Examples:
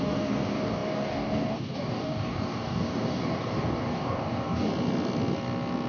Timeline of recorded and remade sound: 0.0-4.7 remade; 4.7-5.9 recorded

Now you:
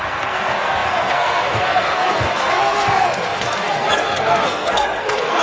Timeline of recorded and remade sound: 0.0-5.4 remade

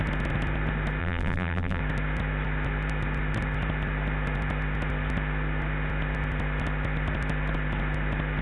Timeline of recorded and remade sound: 0.0-1.0 recorded; 1.0-1.8 remade; 1.8-8.4 recorded

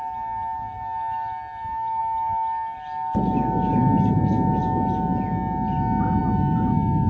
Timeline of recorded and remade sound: 0.0-7.1 recorded

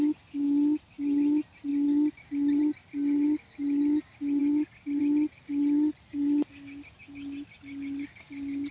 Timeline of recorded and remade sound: 0.0-8.7 recorded

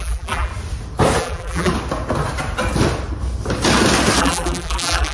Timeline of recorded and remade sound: 0.0-0.5 remade; 0.5-1.2 recorded; 1.2-1.7 remade; 1.7-4.2 recorded; 4.2-5.1 remade